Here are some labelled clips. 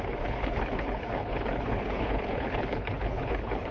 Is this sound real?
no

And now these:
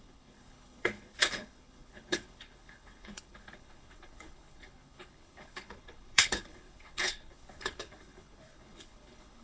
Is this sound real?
no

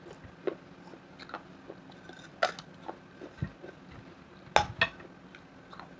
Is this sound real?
yes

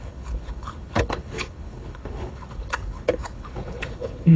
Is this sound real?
no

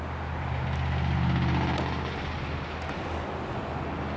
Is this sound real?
yes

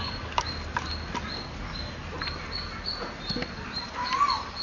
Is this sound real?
yes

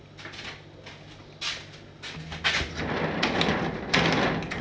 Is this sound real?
yes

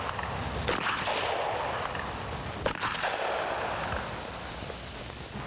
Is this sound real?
yes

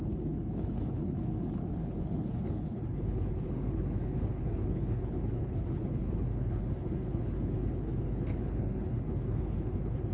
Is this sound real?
no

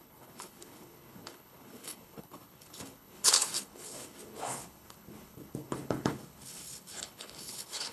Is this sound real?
no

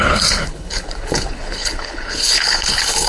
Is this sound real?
no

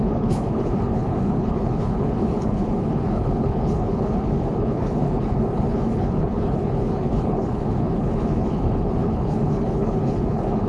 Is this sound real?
no